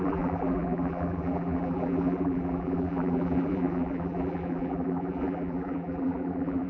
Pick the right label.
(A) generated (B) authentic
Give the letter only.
A